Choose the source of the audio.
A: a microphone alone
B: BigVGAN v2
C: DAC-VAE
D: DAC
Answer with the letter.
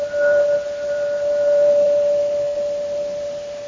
B